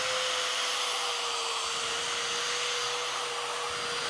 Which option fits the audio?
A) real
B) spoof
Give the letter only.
A